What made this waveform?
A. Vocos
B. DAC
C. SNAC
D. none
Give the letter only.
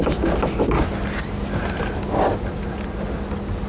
D